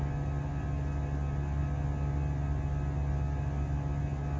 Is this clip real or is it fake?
real